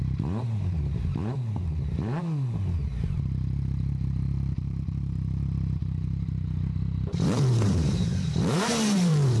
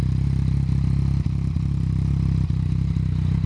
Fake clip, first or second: first